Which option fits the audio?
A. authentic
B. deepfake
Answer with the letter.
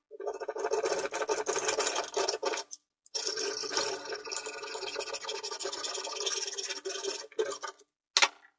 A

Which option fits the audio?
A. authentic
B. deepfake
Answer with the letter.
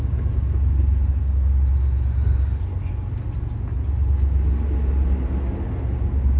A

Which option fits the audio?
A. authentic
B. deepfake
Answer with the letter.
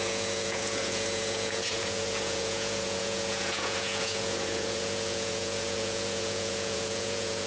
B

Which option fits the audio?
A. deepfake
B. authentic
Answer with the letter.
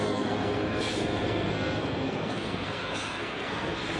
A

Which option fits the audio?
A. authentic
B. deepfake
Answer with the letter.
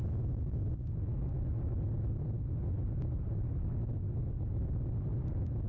A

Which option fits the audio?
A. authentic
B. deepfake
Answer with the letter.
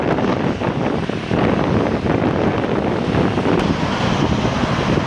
A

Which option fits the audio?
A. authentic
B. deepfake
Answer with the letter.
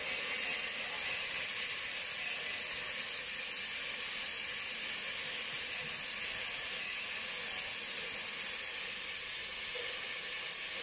A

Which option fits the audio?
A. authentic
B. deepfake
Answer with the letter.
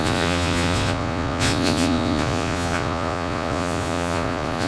B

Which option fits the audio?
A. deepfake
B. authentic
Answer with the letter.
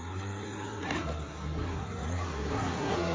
A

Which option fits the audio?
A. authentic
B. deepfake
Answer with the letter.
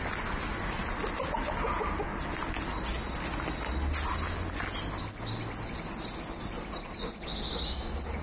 A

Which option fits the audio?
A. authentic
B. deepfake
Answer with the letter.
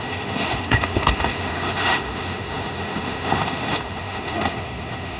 B